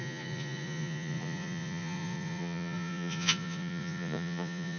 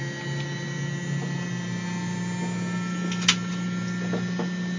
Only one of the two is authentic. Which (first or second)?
second